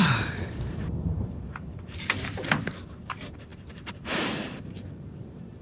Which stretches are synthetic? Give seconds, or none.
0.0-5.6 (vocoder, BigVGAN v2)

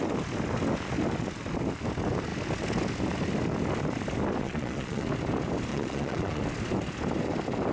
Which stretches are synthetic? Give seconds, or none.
4.4-5.1 (vocoder, Vocos); 5.7-6.4

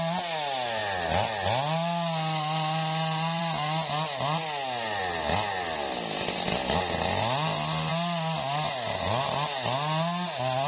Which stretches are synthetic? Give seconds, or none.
none

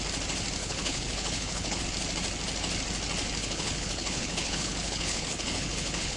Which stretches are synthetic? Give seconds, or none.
0.6-1.8 (codec, HILCodec); 3.4-6.2

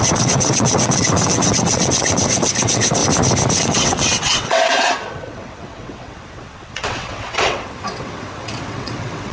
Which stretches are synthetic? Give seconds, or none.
0.0-3.0 (vocoder, WaveNeXt); 3.6-9.3

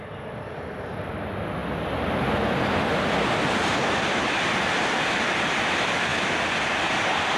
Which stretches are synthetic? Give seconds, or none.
none

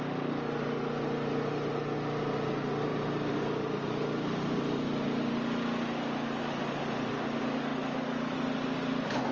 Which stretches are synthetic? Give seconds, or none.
none